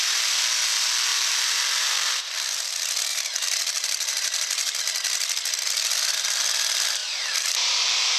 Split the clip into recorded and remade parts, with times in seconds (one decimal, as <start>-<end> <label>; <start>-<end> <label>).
0.0-1.1 recorded; 1.1-2.2 remade; 2.2-3.1 recorded; 3.1-4.8 remade; 4.8-7.0 recorded; 7.0-8.2 remade